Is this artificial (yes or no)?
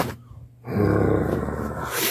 no